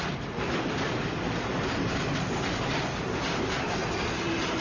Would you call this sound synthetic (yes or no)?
no